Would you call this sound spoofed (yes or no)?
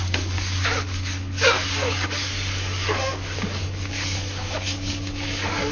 yes